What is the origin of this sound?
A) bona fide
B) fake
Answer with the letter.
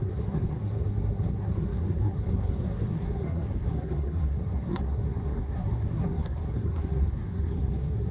B